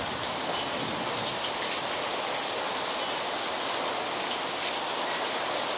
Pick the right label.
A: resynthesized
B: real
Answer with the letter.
B